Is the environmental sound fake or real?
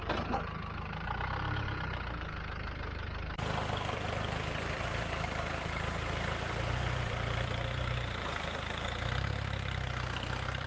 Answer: fake